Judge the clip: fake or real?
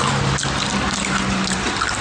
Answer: real